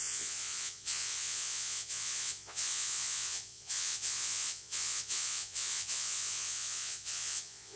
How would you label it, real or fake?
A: fake